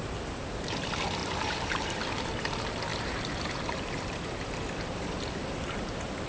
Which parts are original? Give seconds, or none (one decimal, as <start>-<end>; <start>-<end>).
0.0-1.2; 2.1-2.9; 4.5-6.3